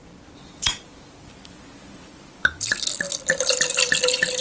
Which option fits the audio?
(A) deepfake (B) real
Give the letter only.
B